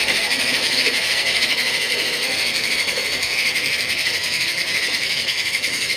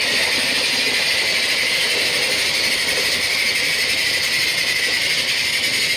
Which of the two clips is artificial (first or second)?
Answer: first